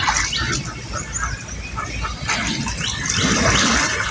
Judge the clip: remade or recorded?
recorded